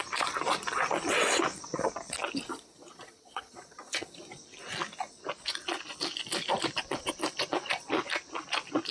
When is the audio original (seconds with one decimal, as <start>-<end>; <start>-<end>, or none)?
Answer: 0.0-2.5; 4.3-8.9